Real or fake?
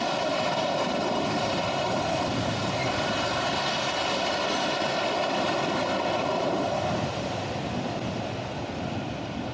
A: fake